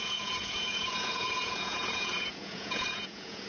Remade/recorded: remade